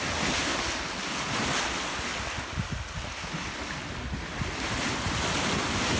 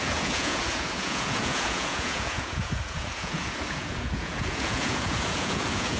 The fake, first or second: second